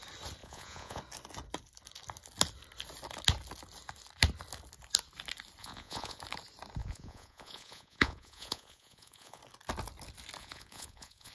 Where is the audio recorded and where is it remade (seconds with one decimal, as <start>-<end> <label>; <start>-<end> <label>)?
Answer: 0.0-0.4 recorded; 0.4-1.0 remade; 1.0-5.6 recorded; 5.6-6.2 remade; 6.2-6.8 recorded; 6.8-9.4 remade; 9.4-10.4 recorded; 10.4-11.3 remade